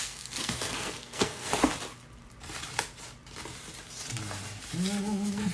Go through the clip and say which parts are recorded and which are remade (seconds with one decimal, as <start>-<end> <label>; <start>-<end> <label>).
0.0-1.7 remade; 1.7-5.0 recorded; 5.0-5.5 remade